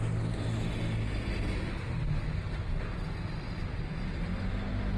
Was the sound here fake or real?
real